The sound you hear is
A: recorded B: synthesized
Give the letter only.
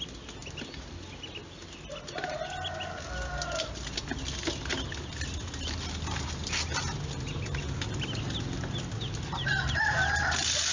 A